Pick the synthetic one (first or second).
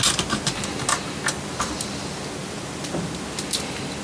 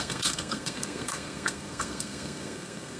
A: second